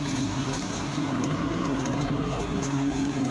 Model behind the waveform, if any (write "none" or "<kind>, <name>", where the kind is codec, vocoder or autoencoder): codec, SNAC